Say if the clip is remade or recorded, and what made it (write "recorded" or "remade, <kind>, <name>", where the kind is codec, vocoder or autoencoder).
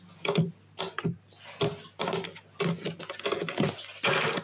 recorded